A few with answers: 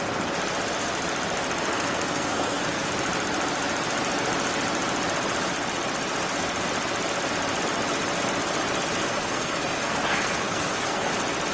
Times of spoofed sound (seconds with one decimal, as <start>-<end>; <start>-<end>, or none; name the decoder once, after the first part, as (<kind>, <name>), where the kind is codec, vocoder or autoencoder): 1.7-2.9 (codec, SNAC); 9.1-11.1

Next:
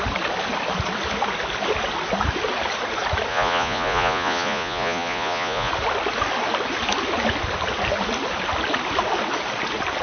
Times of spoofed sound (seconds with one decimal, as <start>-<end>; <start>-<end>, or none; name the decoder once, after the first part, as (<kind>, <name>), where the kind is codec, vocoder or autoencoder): 3.3-5.7 (vocoder, Vocos)

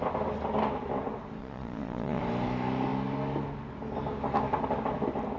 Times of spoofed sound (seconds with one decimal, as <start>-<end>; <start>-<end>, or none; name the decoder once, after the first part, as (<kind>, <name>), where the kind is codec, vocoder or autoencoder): 1.4-2.2 (vocoder, Vocos)